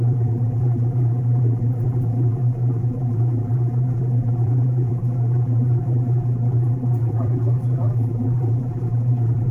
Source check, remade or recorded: remade